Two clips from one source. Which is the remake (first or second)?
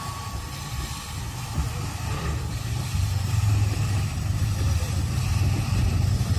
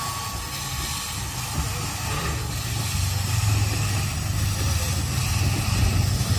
first